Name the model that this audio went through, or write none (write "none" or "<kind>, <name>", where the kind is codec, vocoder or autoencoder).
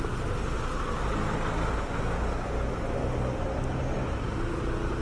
none